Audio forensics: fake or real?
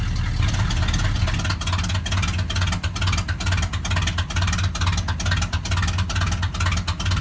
real